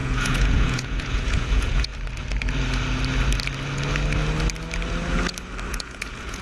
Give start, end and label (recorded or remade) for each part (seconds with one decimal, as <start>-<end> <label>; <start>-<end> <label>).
0.0-1.9 remade; 1.9-5.7 recorded; 5.7-6.4 remade